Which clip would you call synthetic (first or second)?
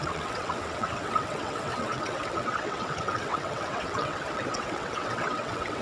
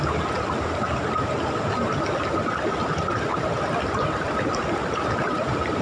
first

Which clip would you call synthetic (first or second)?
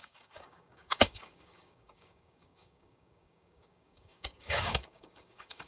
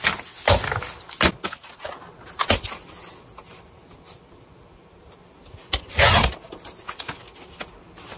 first